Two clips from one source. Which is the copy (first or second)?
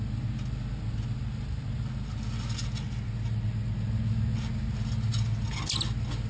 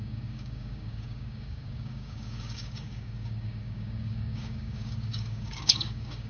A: second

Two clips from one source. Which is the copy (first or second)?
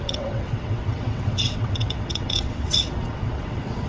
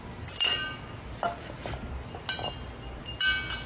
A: first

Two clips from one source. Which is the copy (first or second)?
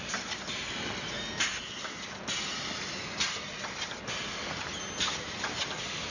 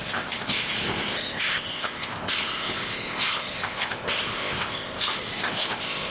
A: second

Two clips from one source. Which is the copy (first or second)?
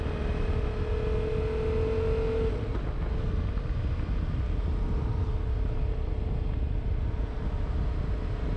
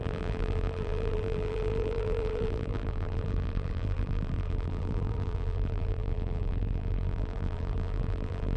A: second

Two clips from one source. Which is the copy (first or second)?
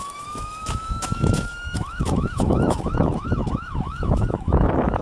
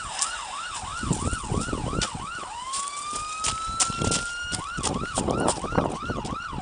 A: first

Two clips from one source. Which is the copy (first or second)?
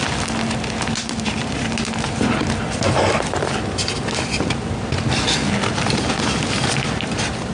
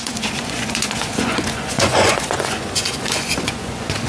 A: second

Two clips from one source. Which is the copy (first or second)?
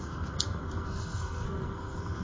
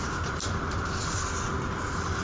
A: first